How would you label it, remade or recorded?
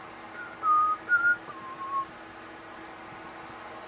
recorded